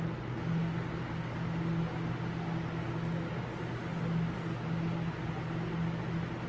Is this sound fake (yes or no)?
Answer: no